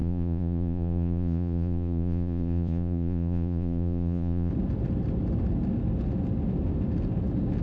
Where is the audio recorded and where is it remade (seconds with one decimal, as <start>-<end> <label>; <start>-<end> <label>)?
0.0-4.5 remade; 4.5-7.6 recorded